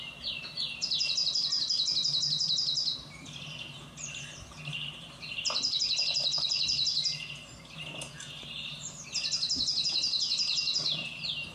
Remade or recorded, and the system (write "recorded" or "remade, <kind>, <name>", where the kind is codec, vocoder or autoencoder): recorded